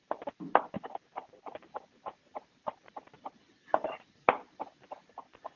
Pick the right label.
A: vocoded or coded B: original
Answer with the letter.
A